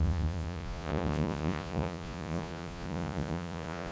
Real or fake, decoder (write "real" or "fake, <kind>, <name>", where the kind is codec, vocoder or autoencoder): fake, vocoder, Vocos